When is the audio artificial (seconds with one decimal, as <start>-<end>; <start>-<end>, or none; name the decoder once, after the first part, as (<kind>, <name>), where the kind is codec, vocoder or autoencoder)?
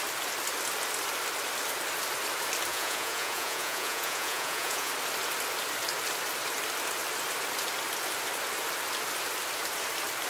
2.7-4.9 (vocoder, Vocos)